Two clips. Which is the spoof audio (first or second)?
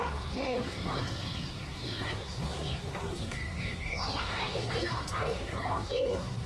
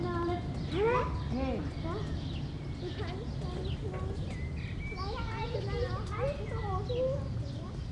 first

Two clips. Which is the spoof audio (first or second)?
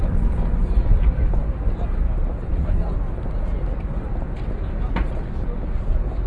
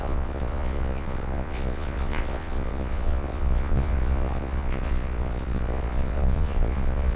second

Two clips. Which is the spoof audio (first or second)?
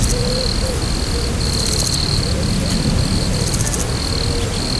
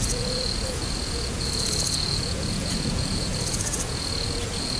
second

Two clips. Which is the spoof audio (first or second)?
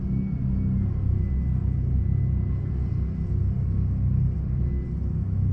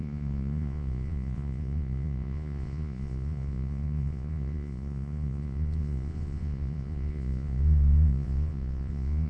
second